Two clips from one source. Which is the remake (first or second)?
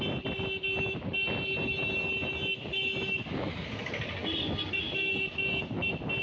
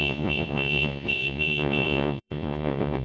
second